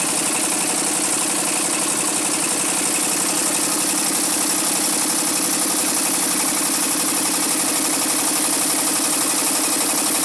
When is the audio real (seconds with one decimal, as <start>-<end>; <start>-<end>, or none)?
0.0-10.2